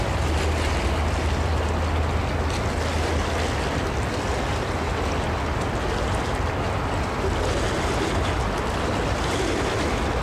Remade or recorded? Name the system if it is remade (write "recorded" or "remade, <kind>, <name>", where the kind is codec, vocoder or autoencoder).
recorded